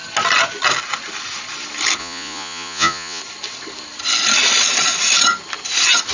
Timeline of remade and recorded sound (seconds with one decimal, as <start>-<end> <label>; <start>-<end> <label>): 0.0-2.0 recorded; 2.0-3.2 remade; 3.2-6.1 recorded